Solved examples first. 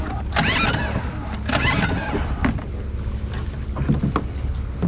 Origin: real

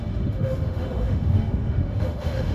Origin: fake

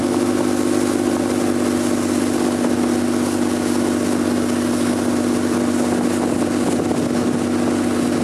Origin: real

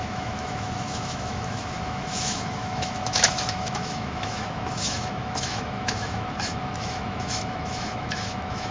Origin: fake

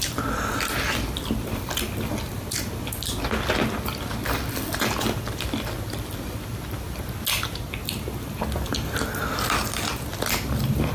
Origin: real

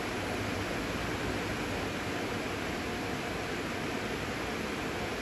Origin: real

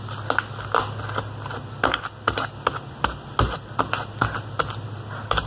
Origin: real